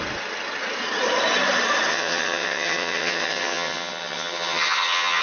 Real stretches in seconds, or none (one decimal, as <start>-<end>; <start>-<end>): 0.0-1.9